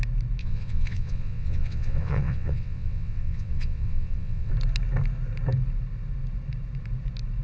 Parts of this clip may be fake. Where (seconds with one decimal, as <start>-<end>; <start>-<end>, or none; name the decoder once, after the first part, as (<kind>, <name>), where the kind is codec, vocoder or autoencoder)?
0.4-4.5 (vocoder, WaveNeXt)